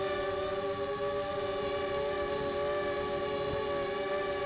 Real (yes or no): yes